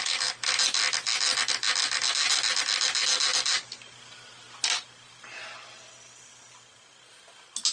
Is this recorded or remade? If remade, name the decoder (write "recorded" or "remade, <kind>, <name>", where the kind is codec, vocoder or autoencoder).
recorded